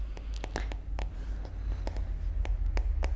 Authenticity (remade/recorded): recorded